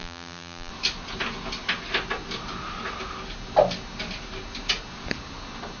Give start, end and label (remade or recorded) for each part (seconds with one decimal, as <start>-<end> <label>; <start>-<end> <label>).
0.0-0.7 remade; 0.7-5.8 recorded